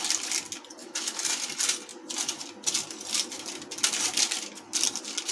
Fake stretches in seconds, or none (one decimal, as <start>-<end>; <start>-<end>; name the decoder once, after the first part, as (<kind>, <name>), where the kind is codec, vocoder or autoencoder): 0.8-1.3 (autoencoder, DAC-VAE)

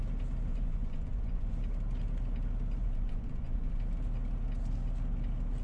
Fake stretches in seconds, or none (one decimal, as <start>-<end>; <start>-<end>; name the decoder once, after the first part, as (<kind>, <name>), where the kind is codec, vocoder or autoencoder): 0.5-1.5 (vocoder, Vocos); 2.8-3.8

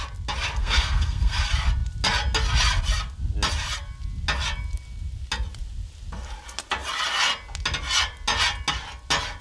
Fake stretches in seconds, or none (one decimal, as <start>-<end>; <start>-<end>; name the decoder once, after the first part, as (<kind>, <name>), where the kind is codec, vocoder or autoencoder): 0.6-1.4 (codec, SNAC)